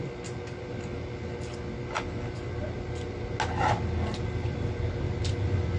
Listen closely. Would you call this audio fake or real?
real